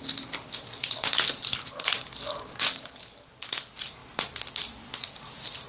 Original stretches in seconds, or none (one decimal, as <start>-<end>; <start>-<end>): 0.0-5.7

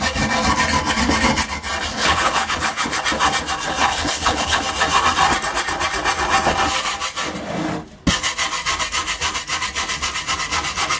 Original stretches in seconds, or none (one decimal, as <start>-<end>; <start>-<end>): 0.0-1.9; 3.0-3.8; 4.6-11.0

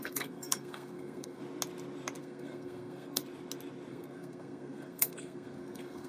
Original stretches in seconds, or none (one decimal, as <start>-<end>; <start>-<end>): 1.4-2.2; 3.2-3.9